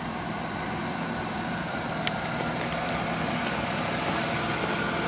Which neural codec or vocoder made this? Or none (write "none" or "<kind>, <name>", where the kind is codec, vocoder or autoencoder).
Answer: none